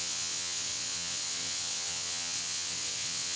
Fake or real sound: fake